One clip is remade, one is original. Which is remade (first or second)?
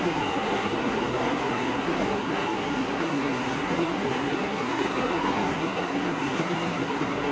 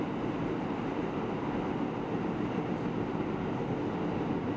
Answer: first